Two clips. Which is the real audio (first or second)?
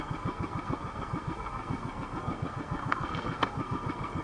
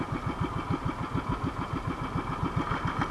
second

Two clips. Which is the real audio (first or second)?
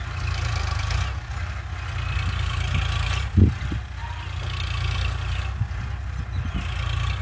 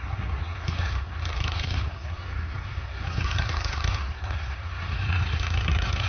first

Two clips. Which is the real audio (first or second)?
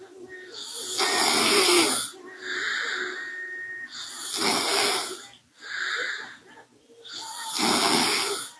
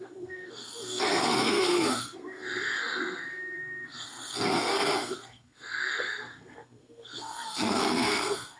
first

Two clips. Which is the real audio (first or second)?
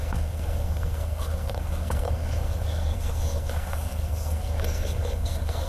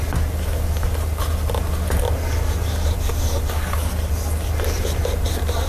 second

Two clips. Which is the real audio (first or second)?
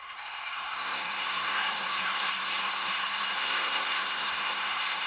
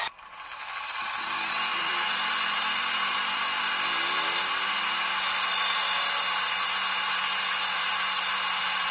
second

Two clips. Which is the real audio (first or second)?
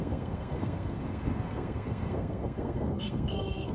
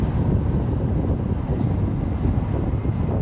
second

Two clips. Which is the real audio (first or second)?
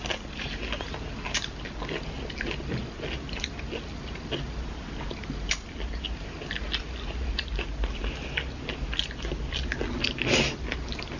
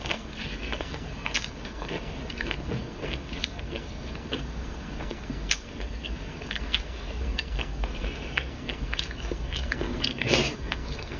first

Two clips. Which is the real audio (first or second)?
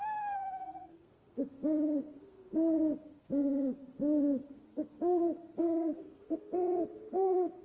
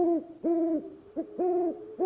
second